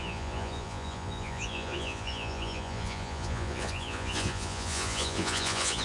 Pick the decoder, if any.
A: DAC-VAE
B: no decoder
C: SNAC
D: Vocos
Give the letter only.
D